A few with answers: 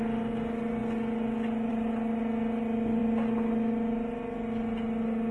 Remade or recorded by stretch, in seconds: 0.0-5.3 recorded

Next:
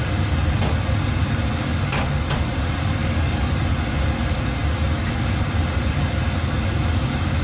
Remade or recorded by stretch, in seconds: 0.0-3.0 recorded; 3.0-3.5 remade; 3.5-7.4 recorded

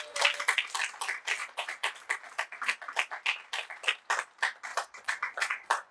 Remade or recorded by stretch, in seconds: 0.0-1.4 recorded; 1.4-1.9 remade; 1.9-4.7 recorded; 4.7-5.9 remade

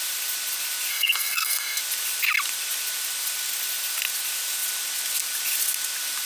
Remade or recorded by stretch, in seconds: 0.0-0.9 recorded; 0.9-1.8 remade; 1.8-6.3 recorded

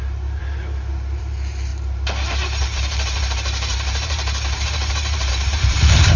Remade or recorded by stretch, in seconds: 0.0-0.4 remade; 0.4-1.2 recorded; 1.2-6.2 remade

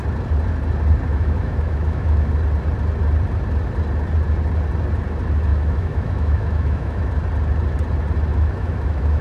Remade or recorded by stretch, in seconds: 0.0-1.1 recorded; 1.1-2.3 remade; 2.3-5.5 recorded; 5.5-7.1 remade; 7.1-8.3 recorded; 8.3-9.2 remade

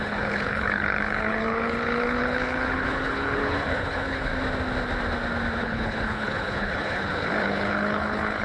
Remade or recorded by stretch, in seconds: 0.0-4.3 remade; 4.3-5.6 recorded; 5.6-8.4 remade

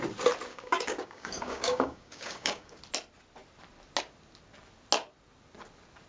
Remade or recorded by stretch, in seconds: 0.0-0.5 recorded; 0.5-2.8 remade; 2.8-6.1 recorded